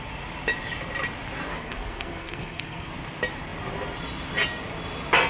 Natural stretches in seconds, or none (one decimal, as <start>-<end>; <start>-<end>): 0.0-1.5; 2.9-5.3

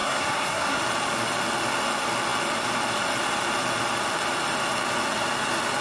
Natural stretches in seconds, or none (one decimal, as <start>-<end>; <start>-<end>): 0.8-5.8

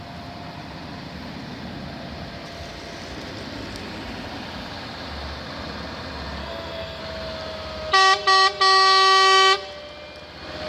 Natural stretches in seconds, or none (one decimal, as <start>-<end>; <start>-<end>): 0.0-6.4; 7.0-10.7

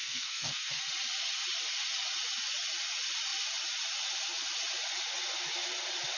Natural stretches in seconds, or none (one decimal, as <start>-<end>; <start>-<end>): 0.8-6.2